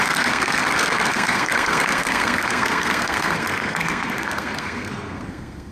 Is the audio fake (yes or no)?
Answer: yes